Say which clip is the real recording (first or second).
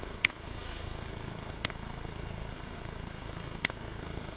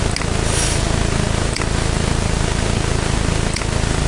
second